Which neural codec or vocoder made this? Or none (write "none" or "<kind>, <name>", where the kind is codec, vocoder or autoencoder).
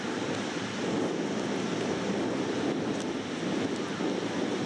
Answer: none